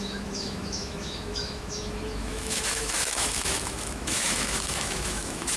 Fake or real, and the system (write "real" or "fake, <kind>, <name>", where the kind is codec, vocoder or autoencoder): fake, autoencoder, DAC-VAE